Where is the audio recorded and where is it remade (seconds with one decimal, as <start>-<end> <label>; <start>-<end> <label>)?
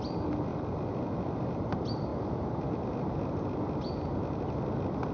0.0-5.1 recorded